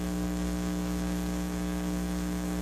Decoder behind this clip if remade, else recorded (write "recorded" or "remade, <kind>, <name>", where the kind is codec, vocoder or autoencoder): remade, codec, DAC